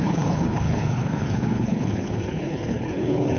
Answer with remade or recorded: remade